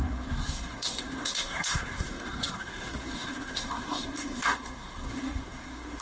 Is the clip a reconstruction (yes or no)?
yes